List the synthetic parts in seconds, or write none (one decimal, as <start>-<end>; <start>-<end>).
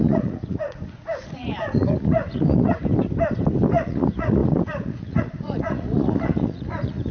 0.0-2.8; 3.7-7.1